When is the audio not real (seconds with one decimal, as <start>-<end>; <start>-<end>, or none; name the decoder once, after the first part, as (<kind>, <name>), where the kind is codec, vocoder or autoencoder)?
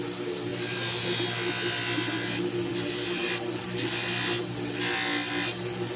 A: none